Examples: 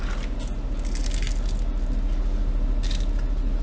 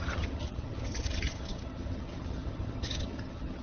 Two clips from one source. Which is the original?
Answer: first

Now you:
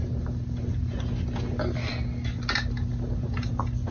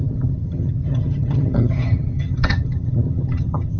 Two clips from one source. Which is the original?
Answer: first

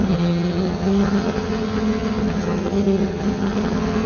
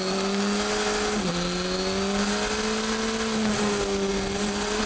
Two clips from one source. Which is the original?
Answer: second